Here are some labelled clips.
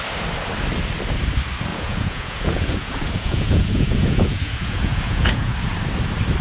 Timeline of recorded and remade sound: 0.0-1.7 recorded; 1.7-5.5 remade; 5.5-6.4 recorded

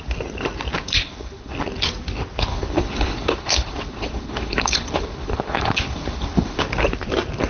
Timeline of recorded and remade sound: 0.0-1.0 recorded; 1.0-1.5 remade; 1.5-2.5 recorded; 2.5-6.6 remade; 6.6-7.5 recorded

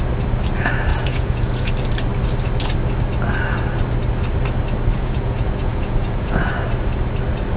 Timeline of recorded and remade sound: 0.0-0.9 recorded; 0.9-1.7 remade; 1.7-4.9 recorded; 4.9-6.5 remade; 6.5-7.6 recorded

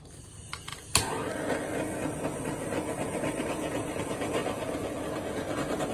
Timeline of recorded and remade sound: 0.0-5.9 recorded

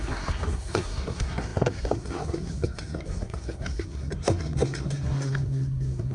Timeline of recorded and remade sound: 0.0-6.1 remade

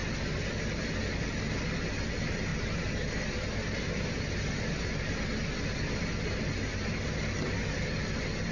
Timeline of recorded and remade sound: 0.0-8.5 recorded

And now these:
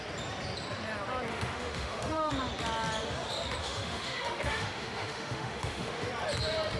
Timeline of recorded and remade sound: 0.0-1.3 recorded; 1.3-2.3 remade; 2.3-3.6 recorded; 3.6-6.1 remade; 6.1-6.8 recorded